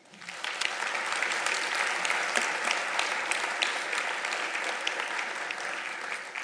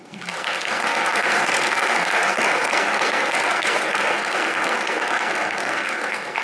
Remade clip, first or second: second